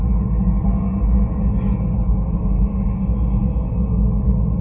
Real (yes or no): yes